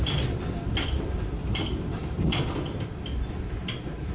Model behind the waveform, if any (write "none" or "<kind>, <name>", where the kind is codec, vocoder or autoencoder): none